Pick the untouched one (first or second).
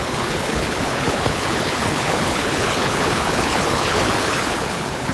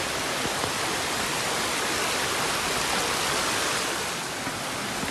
second